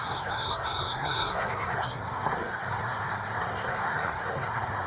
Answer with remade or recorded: remade